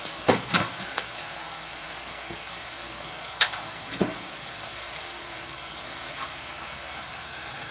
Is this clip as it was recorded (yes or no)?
no